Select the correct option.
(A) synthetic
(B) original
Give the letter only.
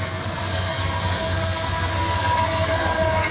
A